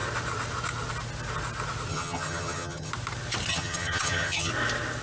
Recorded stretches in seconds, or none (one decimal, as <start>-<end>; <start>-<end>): 0.0-1.9; 2.9-3.5; 4.5-5.0